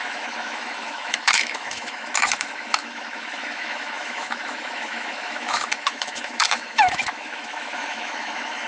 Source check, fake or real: fake